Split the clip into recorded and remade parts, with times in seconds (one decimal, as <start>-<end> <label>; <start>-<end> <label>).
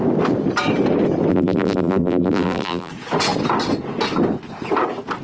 0.0-1.3 recorded; 1.3-2.9 remade; 2.9-5.2 recorded